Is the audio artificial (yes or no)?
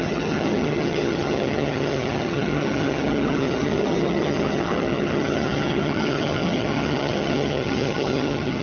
yes